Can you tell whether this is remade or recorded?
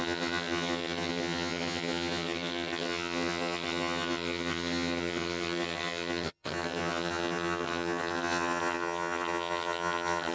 remade